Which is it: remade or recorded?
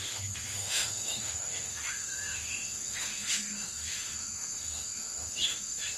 remade